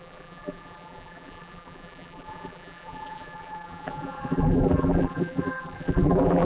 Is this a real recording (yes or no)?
no